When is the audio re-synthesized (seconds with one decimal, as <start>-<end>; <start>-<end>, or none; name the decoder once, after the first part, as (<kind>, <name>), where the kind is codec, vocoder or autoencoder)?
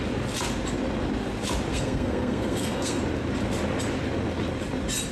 1.7-3.0 (codec, SNAC)